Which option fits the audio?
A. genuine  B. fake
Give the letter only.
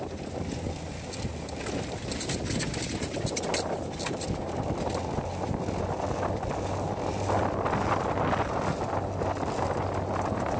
A